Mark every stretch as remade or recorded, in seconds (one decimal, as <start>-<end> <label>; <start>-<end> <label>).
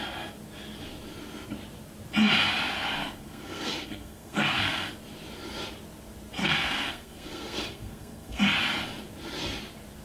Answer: 0.0-3.0 recorded; 3.0-4.9 remade; 4.9-6.4 recorded; 6.4-8.4 remade; 8.4-10.0 recorded